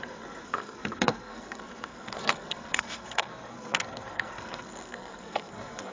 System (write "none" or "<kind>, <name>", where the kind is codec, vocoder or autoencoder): codec, SNAC